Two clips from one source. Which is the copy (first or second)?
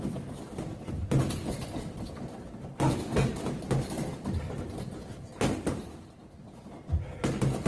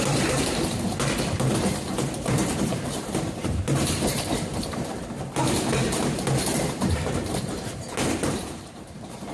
second